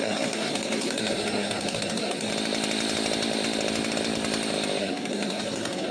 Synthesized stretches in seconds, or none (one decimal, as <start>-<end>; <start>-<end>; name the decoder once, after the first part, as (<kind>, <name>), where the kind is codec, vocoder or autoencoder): 0.0-2.3 (codec, SNAC); 4.8-5.9

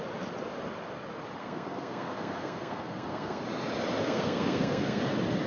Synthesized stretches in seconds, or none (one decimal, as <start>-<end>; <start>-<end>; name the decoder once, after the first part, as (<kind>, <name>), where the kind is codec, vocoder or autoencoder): 1.4-3.4 (codec, SNAC); 4.0-5.0

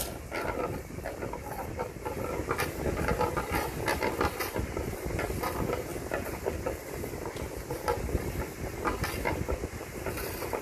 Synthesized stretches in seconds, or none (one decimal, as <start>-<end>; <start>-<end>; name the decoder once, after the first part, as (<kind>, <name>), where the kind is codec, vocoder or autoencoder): none

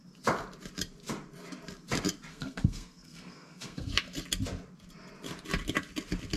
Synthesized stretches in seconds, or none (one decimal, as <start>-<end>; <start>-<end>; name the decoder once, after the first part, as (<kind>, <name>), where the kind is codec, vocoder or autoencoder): 2.3-3.9 (codec, SNAC)

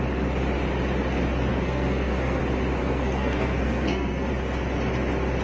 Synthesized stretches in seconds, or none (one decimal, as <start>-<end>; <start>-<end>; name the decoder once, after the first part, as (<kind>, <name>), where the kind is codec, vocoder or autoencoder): 1.5-2.4 (codec, SNAC); 2.8-4.3

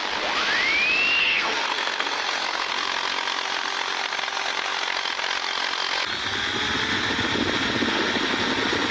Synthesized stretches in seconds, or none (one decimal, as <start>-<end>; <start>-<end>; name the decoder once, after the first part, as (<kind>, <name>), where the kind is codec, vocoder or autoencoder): 1.2-2.7 (codec, SNAC)

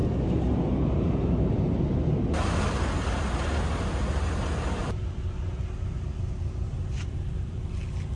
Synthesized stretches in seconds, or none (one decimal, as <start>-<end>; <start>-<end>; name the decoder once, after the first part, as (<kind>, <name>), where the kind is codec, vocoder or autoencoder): none

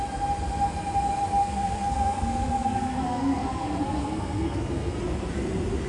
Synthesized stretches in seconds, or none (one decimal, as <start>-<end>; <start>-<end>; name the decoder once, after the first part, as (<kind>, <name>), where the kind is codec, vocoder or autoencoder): 1.4-4.9 (codec, SNAC)